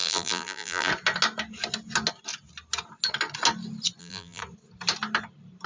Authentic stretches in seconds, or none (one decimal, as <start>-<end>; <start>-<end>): 0.9-4.0; 4.4-5.7